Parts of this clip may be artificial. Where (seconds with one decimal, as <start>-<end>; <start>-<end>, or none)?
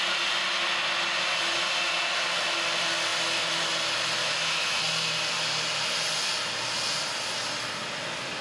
4.2-4.8